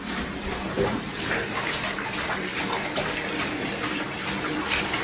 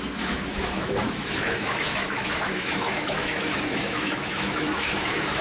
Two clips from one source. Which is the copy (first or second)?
second